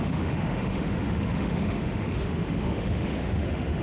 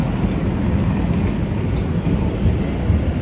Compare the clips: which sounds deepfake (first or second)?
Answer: first